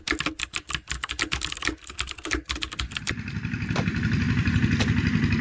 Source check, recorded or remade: recorded